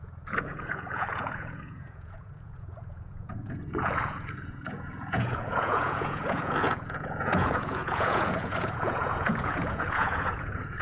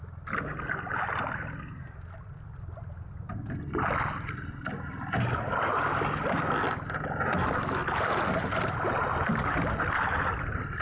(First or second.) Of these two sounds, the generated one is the first